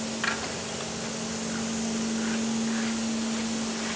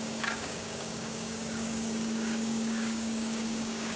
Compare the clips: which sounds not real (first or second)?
second